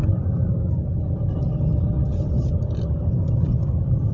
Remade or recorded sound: recorded